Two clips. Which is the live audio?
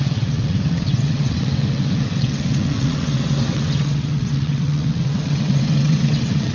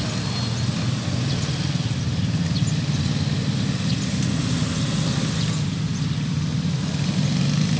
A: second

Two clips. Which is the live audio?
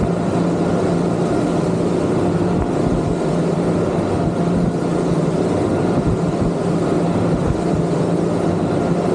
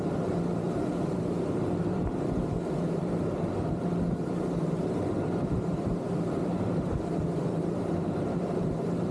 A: first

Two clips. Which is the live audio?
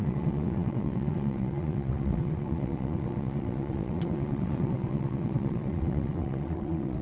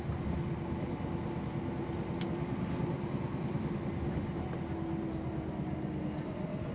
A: second